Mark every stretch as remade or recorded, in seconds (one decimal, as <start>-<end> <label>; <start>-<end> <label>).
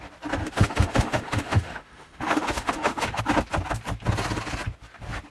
0.0-0.4 recorded; 0.4-3.2 remade; 3.2-5.3 recorded